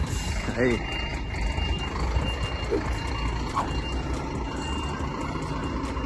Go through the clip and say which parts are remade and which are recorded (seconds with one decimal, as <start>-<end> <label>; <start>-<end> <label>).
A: 0.0-6.1 recorded